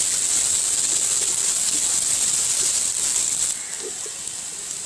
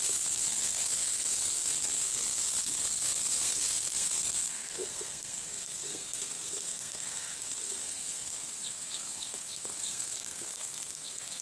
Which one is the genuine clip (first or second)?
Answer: first